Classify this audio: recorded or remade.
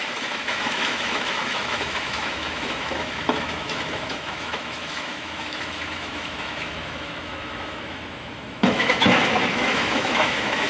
remade